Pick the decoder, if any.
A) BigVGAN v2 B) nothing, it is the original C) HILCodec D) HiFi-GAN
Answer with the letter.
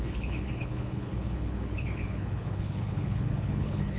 C